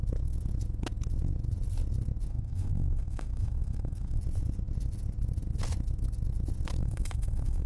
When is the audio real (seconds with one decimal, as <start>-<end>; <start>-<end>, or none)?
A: 0.0-2.3; 4.2-6.8